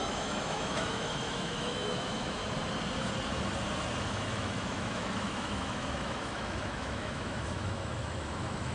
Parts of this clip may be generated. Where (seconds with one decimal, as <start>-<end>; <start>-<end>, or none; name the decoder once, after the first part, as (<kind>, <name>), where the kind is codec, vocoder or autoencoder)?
0.0-2.4 (autoencoder, DAC-VAE); 4.0-8.7